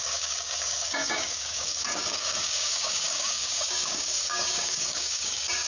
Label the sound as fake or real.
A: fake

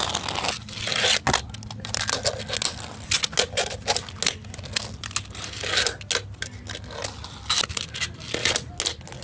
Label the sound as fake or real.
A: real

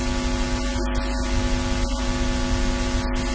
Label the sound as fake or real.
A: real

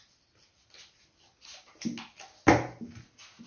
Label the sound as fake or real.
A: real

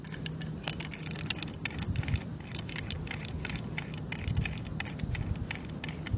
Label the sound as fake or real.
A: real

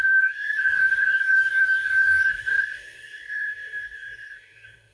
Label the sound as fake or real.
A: fake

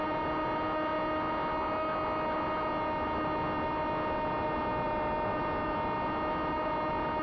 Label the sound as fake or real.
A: real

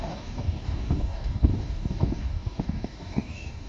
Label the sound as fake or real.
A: fake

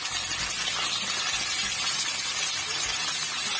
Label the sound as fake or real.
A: real